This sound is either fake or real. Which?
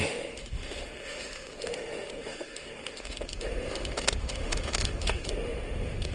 fake